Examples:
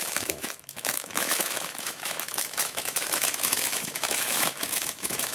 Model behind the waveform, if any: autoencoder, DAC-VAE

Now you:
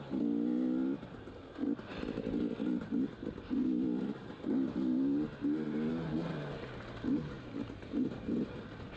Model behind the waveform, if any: none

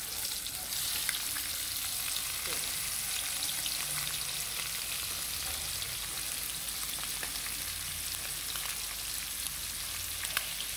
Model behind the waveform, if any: none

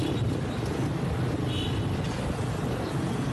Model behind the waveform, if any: none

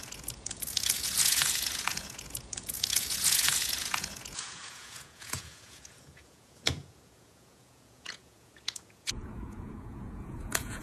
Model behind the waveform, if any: vocoder, Vocos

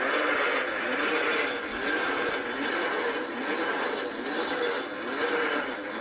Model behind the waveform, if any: none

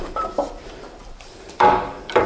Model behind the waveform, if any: vocoder, BigVGAN v2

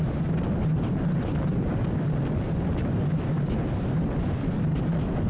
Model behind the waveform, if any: none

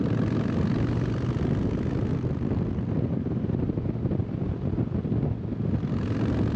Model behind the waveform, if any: none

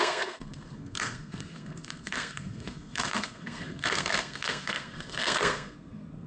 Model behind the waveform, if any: codec, SNAC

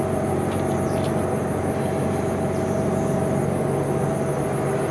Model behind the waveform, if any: none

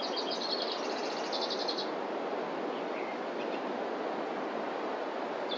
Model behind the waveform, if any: none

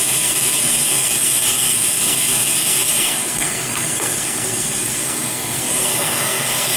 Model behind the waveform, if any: codec, SNAC